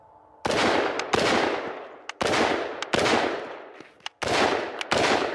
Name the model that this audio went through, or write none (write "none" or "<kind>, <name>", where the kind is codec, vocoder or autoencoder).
none